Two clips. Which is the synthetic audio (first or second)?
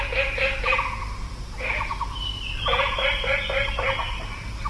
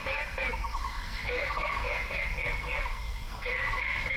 second